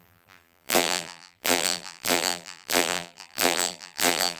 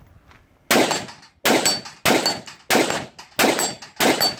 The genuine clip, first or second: second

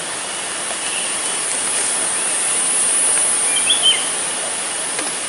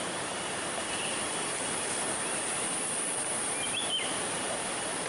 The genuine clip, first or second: first